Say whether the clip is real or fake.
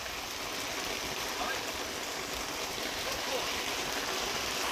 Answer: real